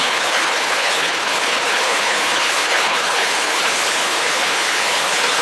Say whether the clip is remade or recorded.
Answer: remade